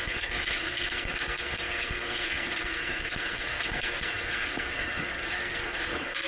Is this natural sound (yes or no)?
no